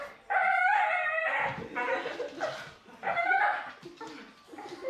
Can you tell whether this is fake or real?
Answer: real